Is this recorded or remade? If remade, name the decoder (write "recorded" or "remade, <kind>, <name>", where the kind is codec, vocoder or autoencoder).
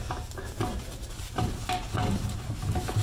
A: recorded